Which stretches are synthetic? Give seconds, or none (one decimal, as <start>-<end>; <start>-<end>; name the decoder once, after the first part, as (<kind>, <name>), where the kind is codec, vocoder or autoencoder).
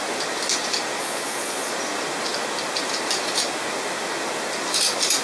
1.0-1.7 (vocoder, Vocos)